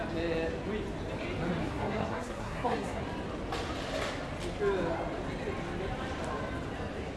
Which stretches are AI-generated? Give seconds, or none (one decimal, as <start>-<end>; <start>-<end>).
1.6-3.0